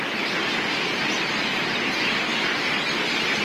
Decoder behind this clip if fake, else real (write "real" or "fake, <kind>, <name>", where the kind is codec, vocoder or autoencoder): real